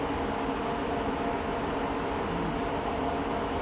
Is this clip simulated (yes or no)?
no